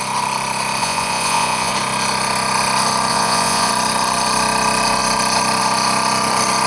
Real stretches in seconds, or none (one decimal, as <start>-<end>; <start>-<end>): 0.0-0.8; 1.7-3.1; 3.7-6.7